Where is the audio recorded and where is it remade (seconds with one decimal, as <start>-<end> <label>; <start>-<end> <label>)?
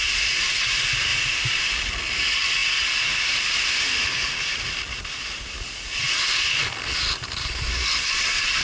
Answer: 0.0-1.1 recorded; 1.1-1.7 remade; 1.7-8.6 recorded